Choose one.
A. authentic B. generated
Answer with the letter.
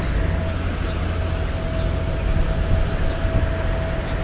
A